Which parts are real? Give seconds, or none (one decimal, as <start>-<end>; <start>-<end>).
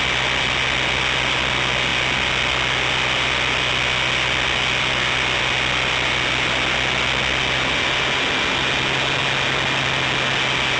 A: 0.0-10.8